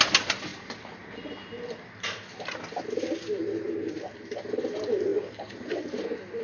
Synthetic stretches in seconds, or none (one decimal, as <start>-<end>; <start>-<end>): none